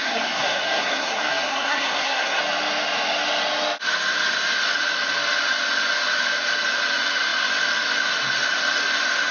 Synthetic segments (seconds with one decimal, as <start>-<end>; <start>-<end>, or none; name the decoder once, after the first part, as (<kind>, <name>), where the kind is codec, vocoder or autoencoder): 0.0-2.4 (codec, SNAC)